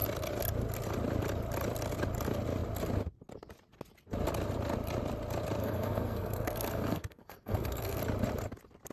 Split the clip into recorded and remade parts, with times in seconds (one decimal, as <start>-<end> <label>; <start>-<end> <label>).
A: 0.0-5.6 recorded; 5.6-8.0 remade; 8.0-8.9 recorded